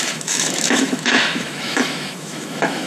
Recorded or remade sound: remade